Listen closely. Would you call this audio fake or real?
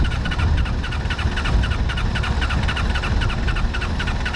real